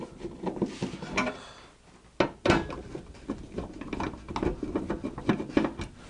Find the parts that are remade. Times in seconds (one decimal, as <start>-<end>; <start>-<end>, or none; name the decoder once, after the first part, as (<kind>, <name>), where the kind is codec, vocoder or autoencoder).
none